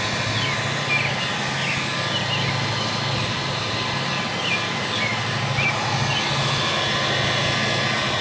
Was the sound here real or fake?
real